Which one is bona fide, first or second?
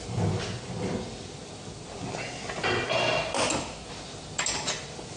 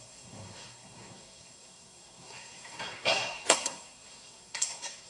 first